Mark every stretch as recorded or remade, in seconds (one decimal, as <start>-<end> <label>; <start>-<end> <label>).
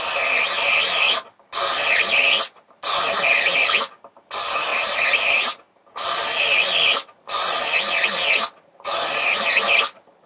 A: 0.0-4.7 recorded; 4.7-5.6 remade; 5.6-10.3 recorded